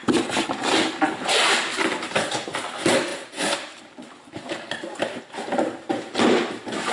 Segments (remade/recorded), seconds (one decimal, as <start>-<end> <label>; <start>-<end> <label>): 0.0-3.1 recorded; 3.1-5.2 remade; 5.2-6.9 recorded